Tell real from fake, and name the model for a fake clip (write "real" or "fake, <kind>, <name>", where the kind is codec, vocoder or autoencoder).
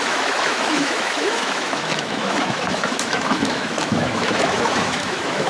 fake, autoencoder, DAC-VAE